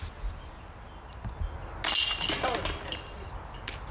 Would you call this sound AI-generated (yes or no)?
no